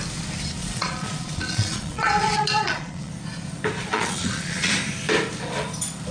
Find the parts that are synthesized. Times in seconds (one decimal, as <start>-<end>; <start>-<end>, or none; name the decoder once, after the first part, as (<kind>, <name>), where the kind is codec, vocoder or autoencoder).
0.6-3.1 (vocoder, Vocos); 3.8-4.7